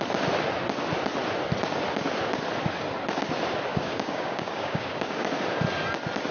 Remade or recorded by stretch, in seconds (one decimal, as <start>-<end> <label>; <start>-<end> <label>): 0.0-3.7 recorded; 3.7-5.3 remade; 5.3-6.3 recorded